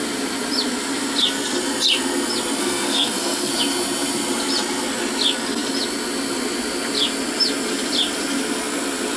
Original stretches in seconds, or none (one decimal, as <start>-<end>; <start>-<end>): 0.0-2.6; 3.5-9.2